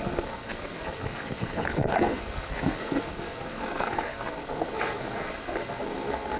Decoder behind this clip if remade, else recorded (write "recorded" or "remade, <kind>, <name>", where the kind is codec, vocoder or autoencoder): remade, codec, SNAC